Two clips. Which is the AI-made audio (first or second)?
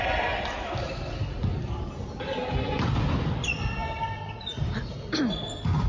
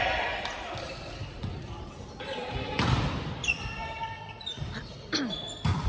second